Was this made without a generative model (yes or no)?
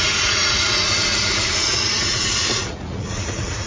no